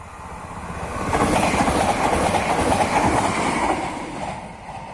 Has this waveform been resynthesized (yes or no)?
no